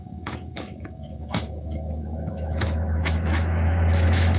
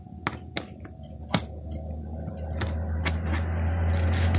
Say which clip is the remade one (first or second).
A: first